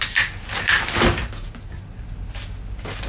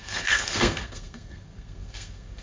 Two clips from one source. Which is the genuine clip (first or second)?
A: first